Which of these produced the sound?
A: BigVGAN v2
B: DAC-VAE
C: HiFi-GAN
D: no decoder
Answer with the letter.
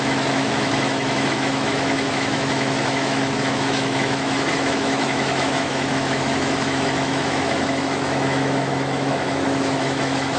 B